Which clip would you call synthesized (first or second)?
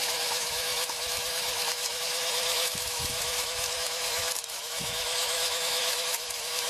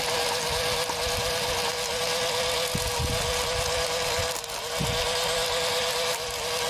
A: first